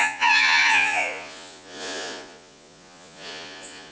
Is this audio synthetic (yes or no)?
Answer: yes